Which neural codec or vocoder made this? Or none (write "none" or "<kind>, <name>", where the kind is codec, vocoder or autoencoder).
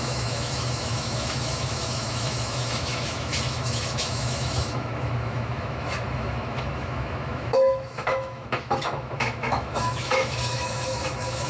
autoencoder, DAC-VAE